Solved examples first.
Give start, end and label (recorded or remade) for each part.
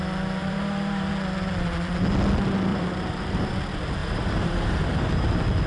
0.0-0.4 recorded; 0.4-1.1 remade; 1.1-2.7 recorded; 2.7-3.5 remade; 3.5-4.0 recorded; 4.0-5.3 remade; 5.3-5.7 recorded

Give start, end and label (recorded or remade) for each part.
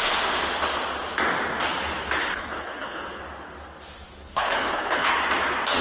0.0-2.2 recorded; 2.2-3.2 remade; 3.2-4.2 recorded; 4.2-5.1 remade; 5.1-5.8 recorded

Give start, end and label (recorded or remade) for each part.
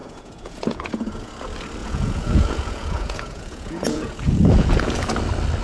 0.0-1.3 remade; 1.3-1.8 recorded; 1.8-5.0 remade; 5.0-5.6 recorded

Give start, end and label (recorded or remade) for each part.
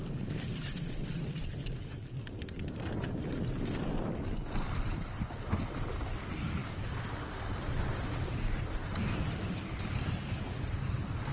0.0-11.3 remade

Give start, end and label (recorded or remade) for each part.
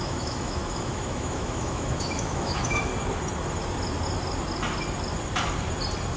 0.0-2.9 remade; 2.9-6.2 recorded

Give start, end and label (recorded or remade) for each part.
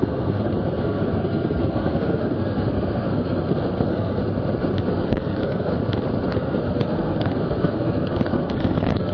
0.0-4.2 remade; 4.2-4.9 recorded; 4.9-5.7 remade; 5.7-6.3 recorded; 6.3-9.1 remade